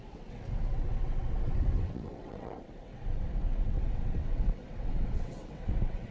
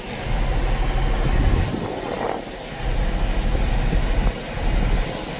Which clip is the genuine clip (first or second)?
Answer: second